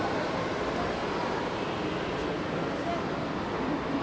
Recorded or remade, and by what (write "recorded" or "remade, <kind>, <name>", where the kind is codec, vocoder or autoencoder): recorded